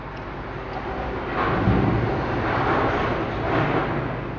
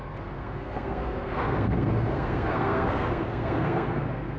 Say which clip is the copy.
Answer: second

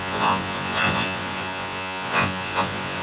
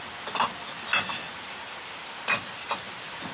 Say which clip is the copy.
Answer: first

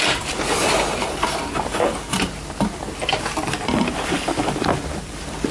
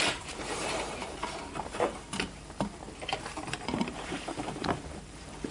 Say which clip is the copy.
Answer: second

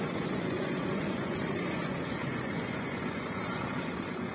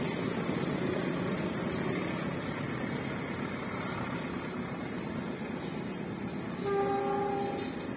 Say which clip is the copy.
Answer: first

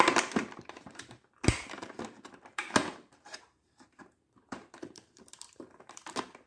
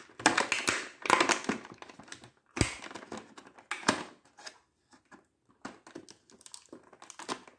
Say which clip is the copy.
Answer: first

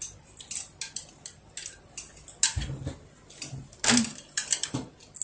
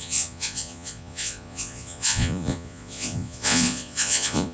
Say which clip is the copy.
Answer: second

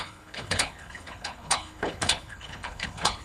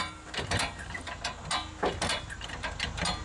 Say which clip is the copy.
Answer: first